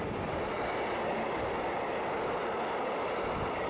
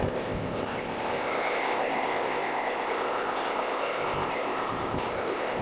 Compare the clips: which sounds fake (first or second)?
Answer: second